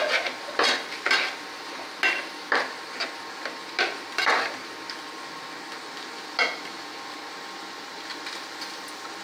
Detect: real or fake real